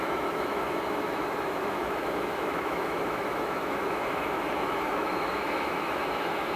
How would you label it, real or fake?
fake